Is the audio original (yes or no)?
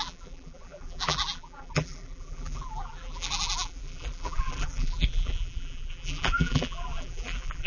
no